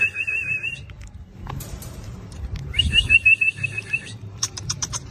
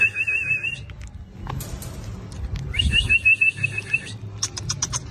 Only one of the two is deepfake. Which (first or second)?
first